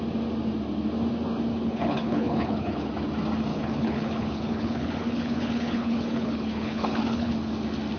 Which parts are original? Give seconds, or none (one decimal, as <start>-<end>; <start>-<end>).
0.0-1.5; 2.9-3.5; 7.5-8.0